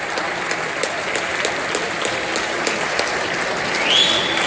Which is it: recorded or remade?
recorded